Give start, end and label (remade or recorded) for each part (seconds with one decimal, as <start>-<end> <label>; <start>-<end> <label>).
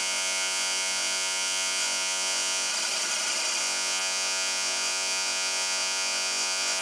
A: 0.0-2.7 remade; 2.7-3.6 recorded; 3.6-6.8 remade